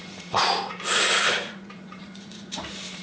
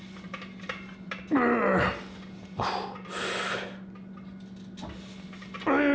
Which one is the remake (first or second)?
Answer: first